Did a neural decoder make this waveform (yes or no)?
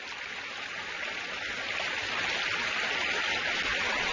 no